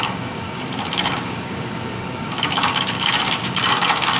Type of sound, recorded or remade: remade